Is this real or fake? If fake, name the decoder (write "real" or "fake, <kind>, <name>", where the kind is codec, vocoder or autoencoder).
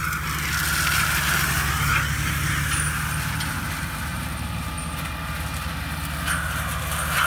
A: real